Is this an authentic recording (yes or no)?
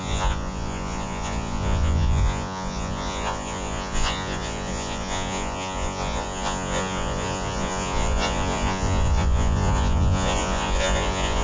no